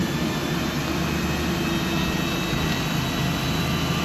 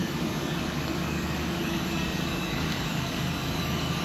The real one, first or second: first